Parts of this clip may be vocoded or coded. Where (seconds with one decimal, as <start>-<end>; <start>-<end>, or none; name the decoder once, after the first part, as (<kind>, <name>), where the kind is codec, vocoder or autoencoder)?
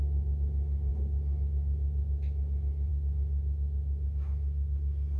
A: none